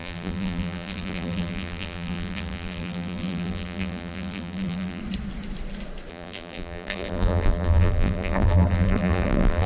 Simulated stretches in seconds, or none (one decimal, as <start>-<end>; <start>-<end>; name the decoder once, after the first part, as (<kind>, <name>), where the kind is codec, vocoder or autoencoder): 0.0-5.0 (vocoder, BigVGAN v2); 6.1-9.7